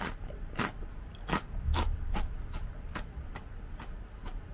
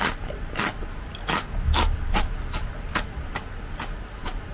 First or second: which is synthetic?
first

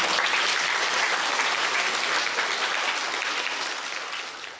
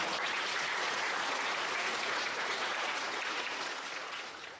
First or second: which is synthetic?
second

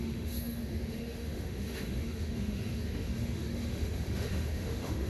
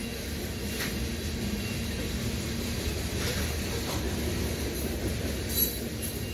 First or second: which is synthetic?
first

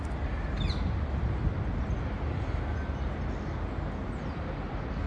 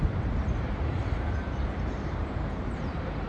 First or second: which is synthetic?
second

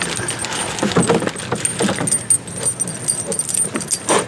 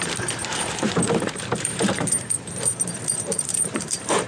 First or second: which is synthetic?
second